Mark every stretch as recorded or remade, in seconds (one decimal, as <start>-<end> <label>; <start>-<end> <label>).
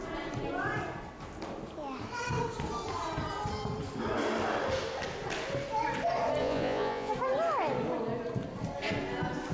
0.0-6.4 recorded; 6.4-7.1 remade; 7.1-9.5 recorded